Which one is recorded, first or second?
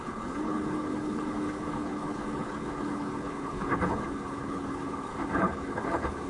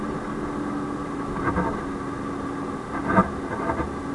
second